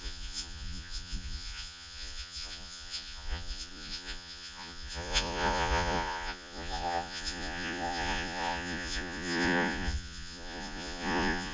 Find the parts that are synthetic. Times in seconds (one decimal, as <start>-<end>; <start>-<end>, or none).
0.0-11.5